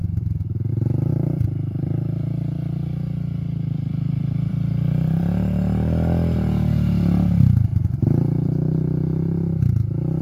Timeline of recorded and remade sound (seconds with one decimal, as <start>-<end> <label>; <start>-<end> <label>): 0.0-1.1 recorded; 1.1-5.2 remade; 5.2-7.7 recorded; 7.7-8.5 remade; 8.5-10.2 recorded